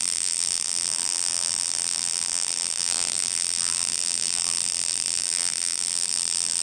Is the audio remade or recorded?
remade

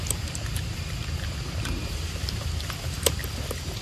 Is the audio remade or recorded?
remade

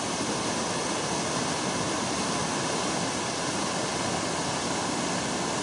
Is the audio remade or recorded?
recorded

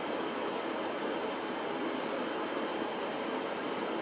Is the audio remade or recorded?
remade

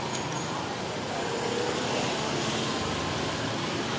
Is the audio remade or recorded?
recorded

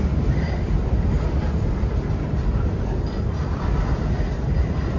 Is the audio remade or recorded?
remade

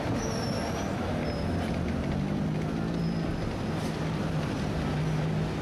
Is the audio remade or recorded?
recorded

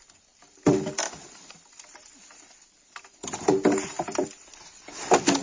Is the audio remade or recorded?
remade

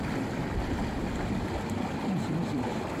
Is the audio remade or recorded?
remade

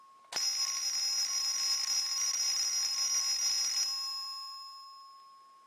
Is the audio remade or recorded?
recorded